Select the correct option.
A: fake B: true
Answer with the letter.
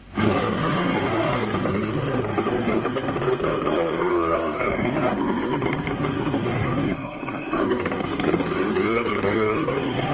A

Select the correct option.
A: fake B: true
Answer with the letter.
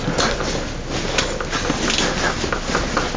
B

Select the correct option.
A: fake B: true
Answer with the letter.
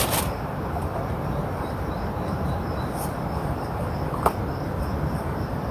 A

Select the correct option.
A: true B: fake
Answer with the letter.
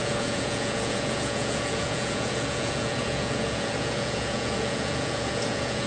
B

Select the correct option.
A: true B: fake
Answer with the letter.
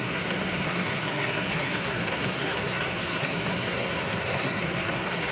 B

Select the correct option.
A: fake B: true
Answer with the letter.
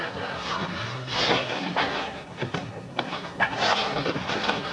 A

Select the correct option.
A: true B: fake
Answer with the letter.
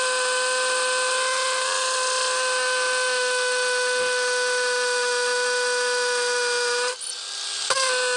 A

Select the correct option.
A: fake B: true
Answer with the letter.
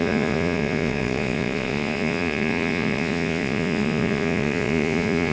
A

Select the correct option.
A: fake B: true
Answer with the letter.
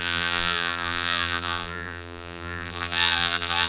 A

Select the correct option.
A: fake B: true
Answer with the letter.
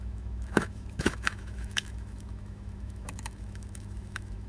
A